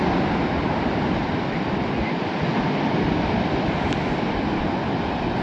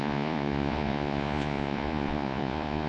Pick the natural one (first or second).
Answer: first